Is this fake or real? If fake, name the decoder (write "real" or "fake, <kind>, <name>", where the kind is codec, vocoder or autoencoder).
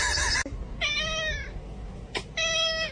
real